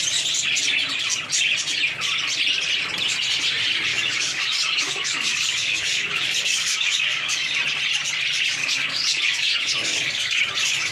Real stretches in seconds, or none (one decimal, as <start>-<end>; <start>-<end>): 0.0-3.9; 7.6-8.6; 10.4-10.9